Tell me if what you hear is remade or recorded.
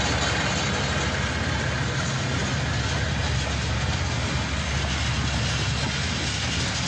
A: recorded